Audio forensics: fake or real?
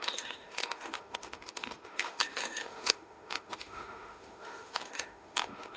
fake